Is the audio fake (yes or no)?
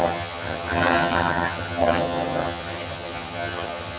yes